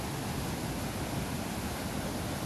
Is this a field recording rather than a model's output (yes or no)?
yes